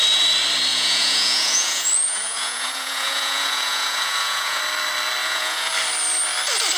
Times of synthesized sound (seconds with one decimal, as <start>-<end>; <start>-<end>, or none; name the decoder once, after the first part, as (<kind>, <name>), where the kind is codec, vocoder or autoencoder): 0.7-4.6 (vocoder, Vocos); 5.2-5.7